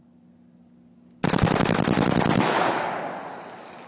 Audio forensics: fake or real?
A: real